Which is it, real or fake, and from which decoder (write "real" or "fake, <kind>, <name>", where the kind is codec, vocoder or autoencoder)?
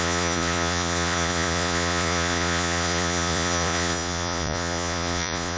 fake, vocoder, Vocos